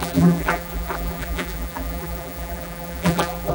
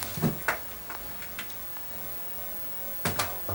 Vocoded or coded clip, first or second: first